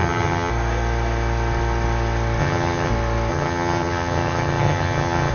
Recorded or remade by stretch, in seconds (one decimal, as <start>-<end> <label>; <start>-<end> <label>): 0.0-0.5 remade; 0.5-2.4 recorded; 2.4-2.9 remade; 2.9-3.3 recorded; 3.3-5.3 remade